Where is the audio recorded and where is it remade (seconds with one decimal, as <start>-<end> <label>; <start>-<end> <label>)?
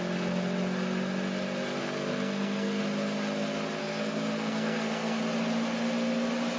0.0-1.8 recorded; 1.8-2.8 remade; 2.8-3.8 recorded; 3.8-5.2 remade; 5.2-6.6 recorded